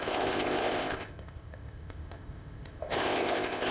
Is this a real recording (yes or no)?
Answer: no